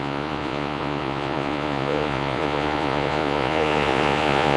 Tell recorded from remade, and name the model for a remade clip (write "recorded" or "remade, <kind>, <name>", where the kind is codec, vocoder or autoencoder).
remade, vocoder, Vocos